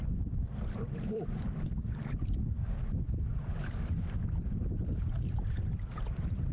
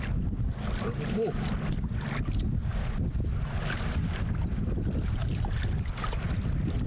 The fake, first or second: first